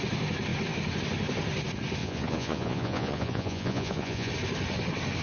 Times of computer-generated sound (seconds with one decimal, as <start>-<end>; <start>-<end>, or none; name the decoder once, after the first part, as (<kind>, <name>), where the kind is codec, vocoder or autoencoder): 2.0-4.3 (vocoder, Vocos)